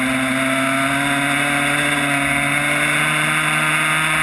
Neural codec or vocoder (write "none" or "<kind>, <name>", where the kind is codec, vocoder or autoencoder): none